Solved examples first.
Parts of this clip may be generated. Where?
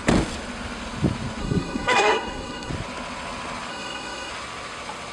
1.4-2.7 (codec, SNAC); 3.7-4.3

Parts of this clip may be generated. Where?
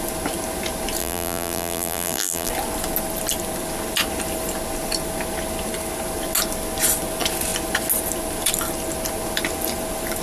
1.0-2.5 (vocoder, BigVGAN v2)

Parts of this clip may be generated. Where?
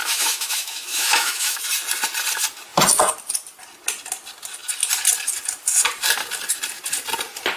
0.0-1.6 (autoencoder, DAC-VAE)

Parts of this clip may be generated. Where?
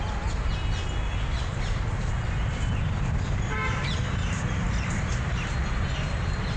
1.5-5.5 (vocoder, BigVGAN v2)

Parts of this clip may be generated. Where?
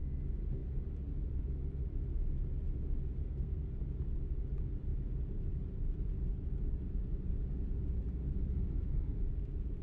3.2-3.7 (codec, SNAC)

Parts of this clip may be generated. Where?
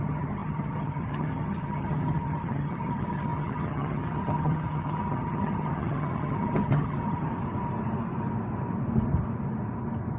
0.0-7.3 (vocoder, HiFi-GAN)